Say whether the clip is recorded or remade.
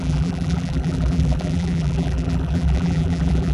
remade